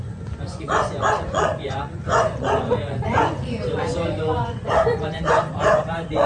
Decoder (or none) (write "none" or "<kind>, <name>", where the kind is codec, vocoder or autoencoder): vocoder, Vocos